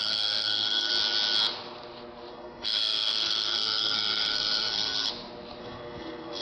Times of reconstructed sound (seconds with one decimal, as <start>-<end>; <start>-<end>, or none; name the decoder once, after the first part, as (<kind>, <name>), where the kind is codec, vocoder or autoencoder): 0.0-0.9 (codec, SNAC); 2.3-5.1; 5.6-6.4